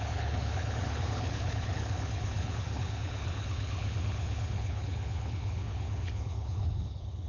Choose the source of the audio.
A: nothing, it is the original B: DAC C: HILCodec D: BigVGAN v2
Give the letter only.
C